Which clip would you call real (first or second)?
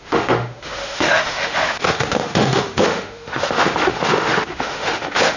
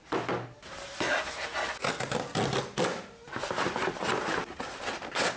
second